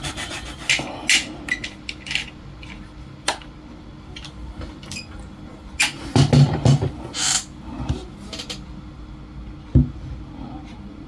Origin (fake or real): real